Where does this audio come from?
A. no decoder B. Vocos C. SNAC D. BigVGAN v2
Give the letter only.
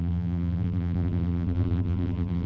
D